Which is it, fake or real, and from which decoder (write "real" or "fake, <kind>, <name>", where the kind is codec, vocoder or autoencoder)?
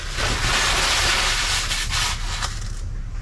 real